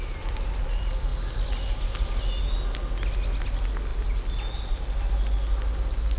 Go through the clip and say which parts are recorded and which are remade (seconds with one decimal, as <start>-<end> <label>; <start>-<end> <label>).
0.0-6.2 recorded